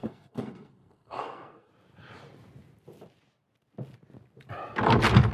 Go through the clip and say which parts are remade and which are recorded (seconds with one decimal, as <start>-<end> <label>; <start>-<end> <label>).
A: 0.0-1.7 remade; 1.7-5.3 recorded